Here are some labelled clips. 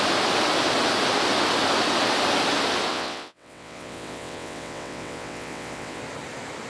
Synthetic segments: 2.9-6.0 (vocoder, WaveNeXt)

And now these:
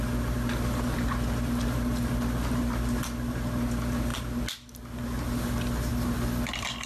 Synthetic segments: none

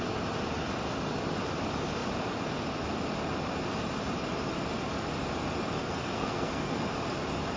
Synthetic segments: 5.8-6.9 (codec, SNAC)

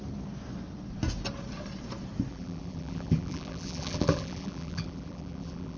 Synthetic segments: 2.3-5.8 (vocoder, BigVGAN v2)

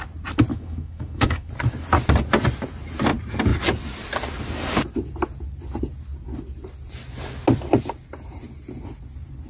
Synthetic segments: 0.5-1.5 (autoencoder, DAC-VAE)

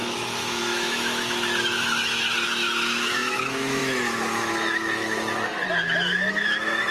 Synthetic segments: 0.0-6.9 (autoencoder, DAC-VAE)